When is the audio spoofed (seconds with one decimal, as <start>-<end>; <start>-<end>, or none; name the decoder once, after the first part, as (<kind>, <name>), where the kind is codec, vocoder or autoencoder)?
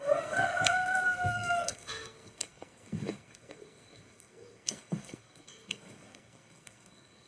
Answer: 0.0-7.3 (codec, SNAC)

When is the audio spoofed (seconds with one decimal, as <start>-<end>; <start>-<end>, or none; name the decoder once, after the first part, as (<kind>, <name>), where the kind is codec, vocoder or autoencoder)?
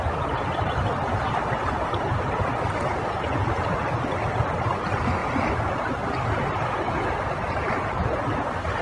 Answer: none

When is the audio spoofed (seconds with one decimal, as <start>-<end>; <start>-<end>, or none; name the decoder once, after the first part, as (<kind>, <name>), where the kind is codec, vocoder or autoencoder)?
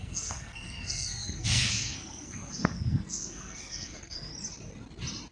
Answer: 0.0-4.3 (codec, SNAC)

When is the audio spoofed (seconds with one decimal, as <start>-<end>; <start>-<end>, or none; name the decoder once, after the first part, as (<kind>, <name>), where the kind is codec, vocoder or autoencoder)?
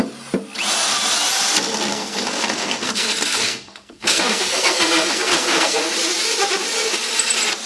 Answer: 1.9-5.8 (codec, SNAC)